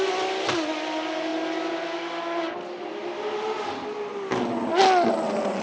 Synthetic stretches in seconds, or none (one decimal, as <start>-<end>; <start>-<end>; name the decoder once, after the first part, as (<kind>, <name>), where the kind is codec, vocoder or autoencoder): none